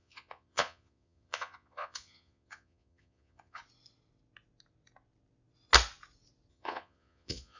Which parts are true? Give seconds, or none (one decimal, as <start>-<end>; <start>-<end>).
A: 3.6-6.5